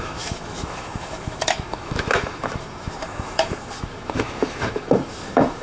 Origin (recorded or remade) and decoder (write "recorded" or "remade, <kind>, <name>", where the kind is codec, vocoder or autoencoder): remade, autoencoder, DAC-VAE